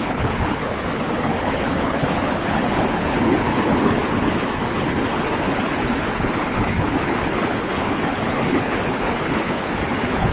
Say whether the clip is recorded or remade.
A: remade